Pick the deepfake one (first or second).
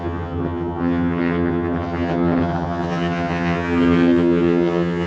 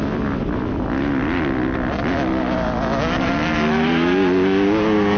first